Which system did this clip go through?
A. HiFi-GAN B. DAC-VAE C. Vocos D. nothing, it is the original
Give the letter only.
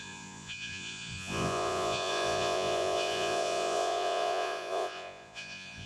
C